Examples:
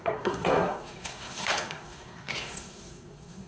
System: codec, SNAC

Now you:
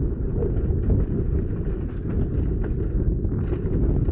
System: none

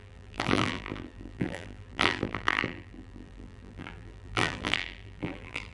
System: vocoder, BigVGAN v2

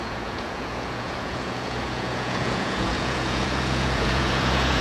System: vocoder, Vocos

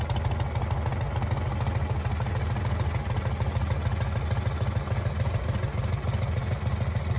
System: none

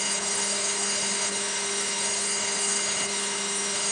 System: codec, HILCodec